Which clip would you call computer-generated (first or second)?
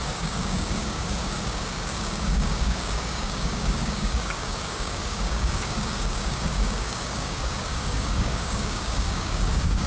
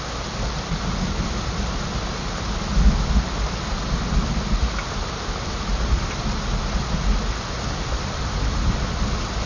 first